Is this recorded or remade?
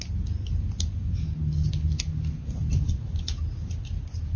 recorded